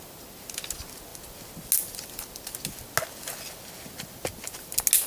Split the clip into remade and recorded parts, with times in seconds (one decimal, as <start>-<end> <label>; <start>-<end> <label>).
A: 0.0-5.1 recorded